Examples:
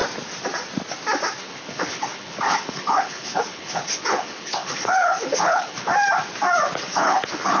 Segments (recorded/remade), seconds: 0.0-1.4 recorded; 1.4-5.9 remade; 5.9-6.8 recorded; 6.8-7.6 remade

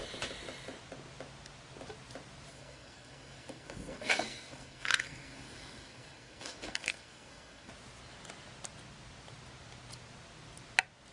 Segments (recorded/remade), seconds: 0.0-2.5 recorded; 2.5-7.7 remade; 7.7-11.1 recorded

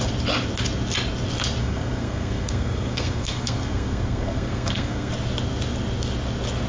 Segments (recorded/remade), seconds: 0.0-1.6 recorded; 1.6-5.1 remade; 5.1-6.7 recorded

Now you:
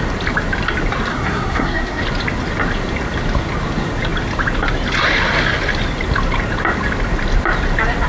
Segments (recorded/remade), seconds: 0.0-1.1 recorded; 1.1-2.0 remade; 2.0-8.1 recorded